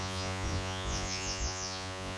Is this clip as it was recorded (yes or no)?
no